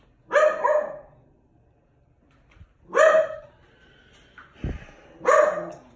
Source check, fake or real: real